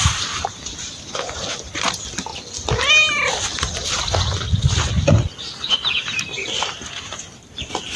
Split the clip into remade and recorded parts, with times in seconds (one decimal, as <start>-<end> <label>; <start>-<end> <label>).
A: 0.0-2.3 remade; 2.3-5.4 recorded; 5.4-8.0 remade